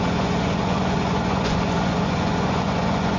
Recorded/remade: remade